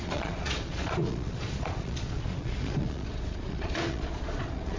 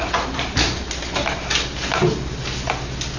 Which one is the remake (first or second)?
first